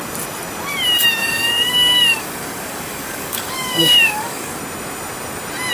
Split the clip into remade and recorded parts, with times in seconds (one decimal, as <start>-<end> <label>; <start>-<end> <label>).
0.0-1.2 recorded; 1.2-4.6 remade; 4.6-5.7 recorded